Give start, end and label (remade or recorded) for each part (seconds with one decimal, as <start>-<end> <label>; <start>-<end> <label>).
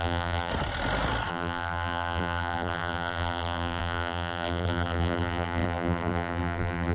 0.0-0.5 remade; 0.5-1.3 recorded; 1.3-6.9 remade